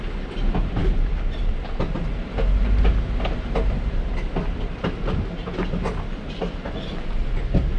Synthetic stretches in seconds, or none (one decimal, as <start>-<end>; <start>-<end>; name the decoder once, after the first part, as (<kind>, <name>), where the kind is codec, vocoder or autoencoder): none